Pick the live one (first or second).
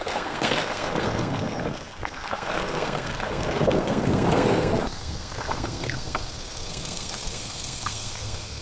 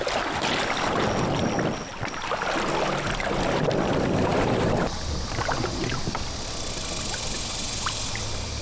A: second